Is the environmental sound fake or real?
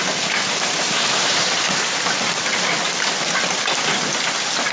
real